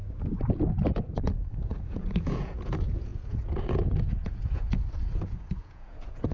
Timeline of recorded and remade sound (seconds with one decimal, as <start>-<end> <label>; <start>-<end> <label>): 0.0-0.8 recorded; 0.8-6.3 remade